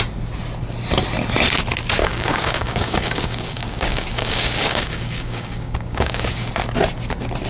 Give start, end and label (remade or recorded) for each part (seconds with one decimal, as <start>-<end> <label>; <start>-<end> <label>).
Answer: 0.0-2.0 recorded; 2.0-6.5 remade; 6.5-7.5 recorded